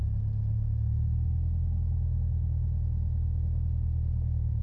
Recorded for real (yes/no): yes